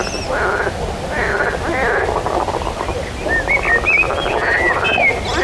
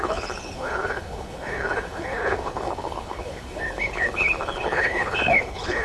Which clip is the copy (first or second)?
second